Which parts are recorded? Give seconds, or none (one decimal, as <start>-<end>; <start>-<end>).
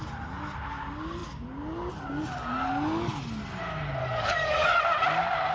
0.0-4.0; 4.8-5.5